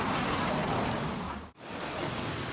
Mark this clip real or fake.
real